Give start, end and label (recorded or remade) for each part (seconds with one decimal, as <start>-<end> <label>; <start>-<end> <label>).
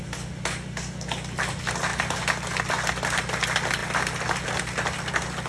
0.0-5.5 recorded